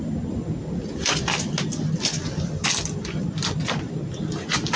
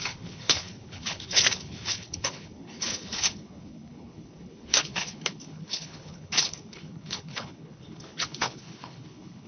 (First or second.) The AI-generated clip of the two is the second